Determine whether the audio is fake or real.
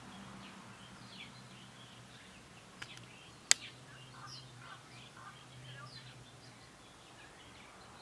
real